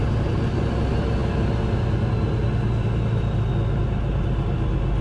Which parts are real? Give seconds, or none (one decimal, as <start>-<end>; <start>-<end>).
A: 0.0-5.0

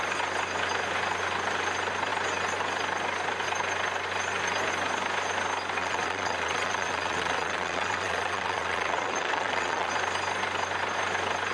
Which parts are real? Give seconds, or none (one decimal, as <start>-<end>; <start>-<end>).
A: 0.0-5.8; 9.9-11.5

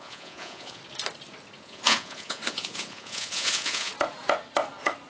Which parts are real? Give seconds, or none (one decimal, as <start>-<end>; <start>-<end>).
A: 0.8-1.6; 3.9-5.1

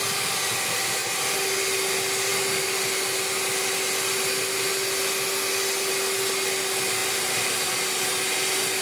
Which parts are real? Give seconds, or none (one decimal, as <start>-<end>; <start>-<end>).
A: 0.0-7.0; 7.5-8.8

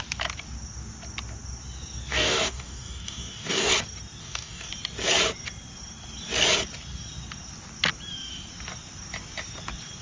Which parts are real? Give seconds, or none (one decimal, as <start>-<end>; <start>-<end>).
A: 0.0-2.1; 3.7-4.2; 4.7-10.0